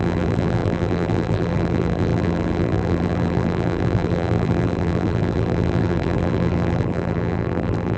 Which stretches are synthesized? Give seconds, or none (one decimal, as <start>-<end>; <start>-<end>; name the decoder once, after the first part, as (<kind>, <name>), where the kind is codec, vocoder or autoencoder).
0.0-8.0 (vocoder, BigVGAN v2)